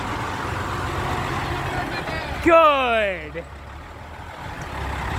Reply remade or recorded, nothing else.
recorded